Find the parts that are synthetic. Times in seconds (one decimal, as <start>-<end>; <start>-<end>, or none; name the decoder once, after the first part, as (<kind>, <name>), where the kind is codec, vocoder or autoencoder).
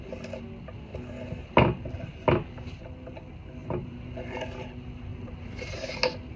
3.6-4.4 (vocoder, BigVGAN v2); 5.1-5.9